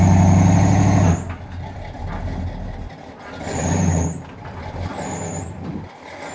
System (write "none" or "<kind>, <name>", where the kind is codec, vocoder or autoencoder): none